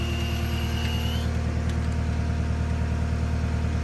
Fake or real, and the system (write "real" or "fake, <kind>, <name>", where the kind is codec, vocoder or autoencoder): real